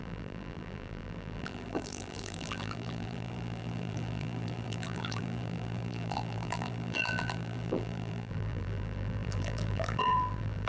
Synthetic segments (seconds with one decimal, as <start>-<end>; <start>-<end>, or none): 0.0-10.7